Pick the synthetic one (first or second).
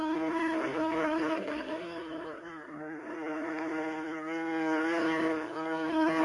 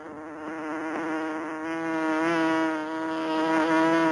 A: first